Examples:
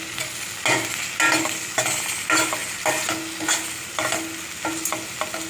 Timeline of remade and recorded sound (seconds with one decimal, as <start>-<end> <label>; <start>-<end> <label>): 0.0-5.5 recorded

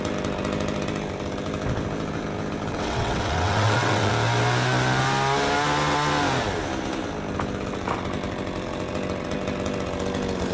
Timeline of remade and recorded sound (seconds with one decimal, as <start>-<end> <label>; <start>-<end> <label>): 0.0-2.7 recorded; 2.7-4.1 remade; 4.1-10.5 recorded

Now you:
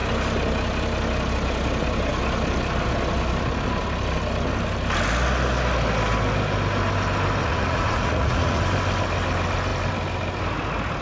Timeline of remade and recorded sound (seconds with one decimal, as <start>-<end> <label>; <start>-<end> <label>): 0.0-7.4 recorded; 7.4-8.6 remade; 8.6-11.0 recorded

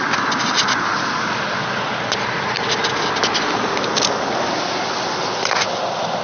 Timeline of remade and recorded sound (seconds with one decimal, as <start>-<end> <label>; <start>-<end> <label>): 0.0-6.2 recorded

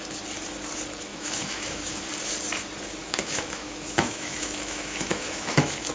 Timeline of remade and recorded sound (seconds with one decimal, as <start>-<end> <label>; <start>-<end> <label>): 0.0-1.1 recorded; 1.1-2.0 remade; 2.0-3.0 recorded; 3.0-5.9 remade

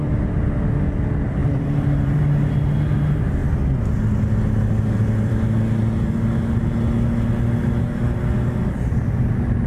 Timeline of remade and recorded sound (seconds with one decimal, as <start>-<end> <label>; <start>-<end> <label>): 0.0-1.4 recorded; 1.4-2.2 remade; 2.2-9.7 recorded